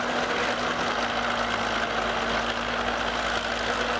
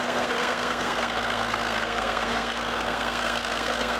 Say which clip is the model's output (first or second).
second